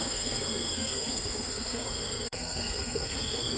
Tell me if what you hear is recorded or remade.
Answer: remade